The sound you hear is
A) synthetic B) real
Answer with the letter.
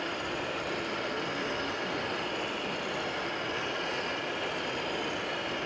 B